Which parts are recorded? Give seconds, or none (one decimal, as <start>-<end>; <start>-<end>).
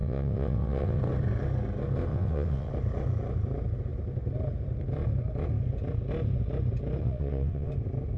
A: 1.0-2.1; 2.7-7.0; 7.7-8.2